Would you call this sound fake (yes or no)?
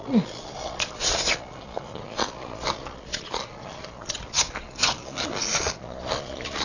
yes